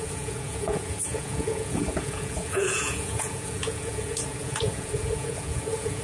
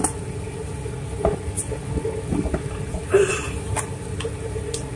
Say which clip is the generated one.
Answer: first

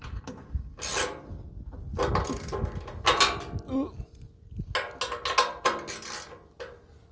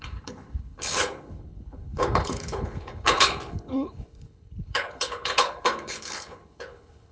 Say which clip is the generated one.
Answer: second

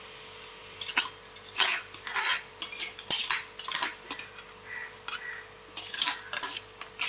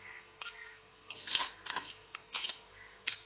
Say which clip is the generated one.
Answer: second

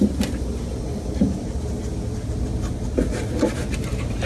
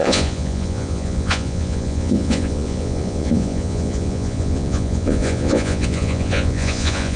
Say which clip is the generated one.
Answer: second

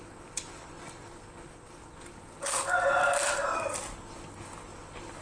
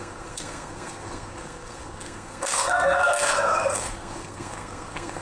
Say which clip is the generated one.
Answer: second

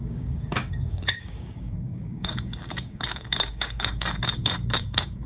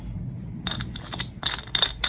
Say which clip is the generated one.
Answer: first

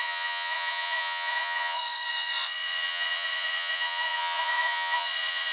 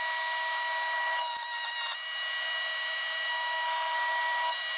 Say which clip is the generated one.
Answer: first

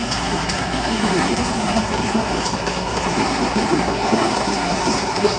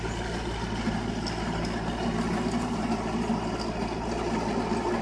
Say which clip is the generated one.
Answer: first